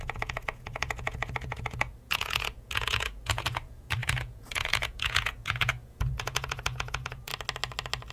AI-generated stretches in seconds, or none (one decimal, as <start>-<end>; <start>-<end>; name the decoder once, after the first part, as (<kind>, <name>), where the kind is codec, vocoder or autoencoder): 0.0-7.3 (vocoder, Vocos)